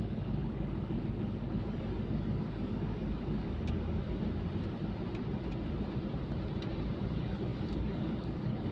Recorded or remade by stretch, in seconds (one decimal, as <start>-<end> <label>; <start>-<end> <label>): 0.0-4.0 remade; 4.0-7.1 recorded; 7.1-8.7 remade